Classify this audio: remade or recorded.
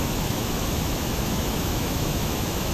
remade